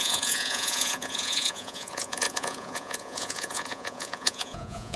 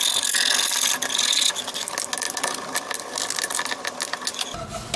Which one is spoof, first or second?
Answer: first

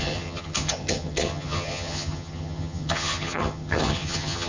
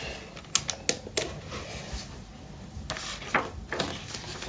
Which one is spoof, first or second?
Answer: first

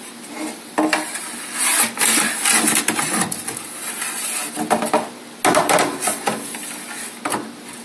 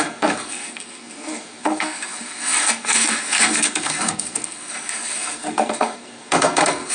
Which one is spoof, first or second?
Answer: second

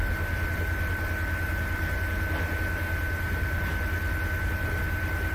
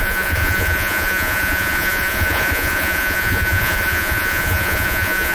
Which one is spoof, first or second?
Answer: second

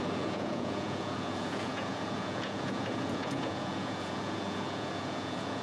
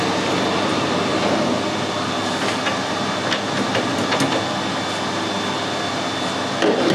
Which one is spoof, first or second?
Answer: first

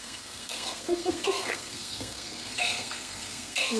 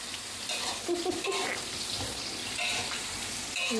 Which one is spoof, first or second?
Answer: first